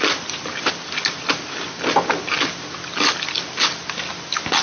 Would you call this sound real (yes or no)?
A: yes